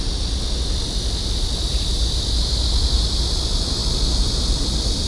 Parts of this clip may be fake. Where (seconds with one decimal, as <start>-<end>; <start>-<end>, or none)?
none

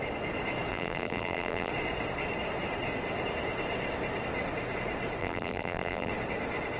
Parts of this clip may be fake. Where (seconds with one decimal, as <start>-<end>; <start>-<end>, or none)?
0.7-1.7; 5.2-6.1

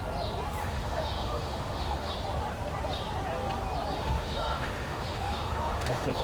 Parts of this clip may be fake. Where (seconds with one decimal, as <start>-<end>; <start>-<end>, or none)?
0.6-2.1; 4.0-6.2

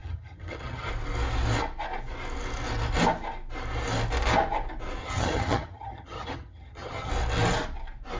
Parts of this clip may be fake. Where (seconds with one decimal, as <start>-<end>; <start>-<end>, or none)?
0.0-0.9; 5.0-7.1